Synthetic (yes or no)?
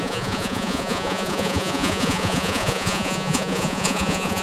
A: yes